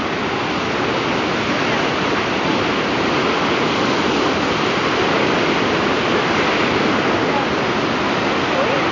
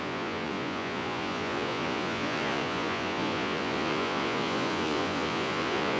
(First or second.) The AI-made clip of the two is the second